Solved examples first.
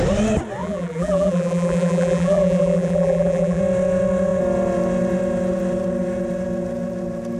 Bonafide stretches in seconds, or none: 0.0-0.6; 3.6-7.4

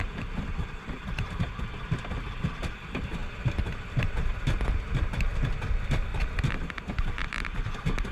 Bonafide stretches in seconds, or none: 0.0-0.5; 1.6-3.2; 4.5-6.1; 6.8-7.2

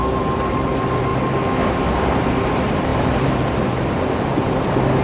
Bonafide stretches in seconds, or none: 1.1-1.9

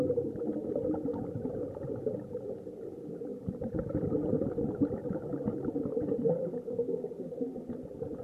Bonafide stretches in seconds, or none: 0.0-3.3; 4.1-8.2

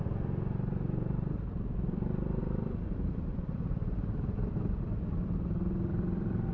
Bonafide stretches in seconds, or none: 0.0-2.4